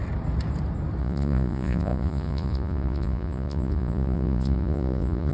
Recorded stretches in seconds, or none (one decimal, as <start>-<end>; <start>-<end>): 0.0-1.0